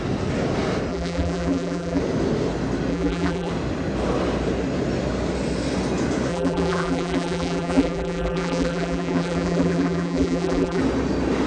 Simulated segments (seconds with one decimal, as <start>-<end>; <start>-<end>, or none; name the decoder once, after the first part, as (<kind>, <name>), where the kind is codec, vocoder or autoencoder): 0.9-2.0 (vocoder, BigVGAN v2); 2.9-3.5; 6.3-10.8